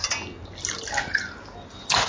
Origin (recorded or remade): recorded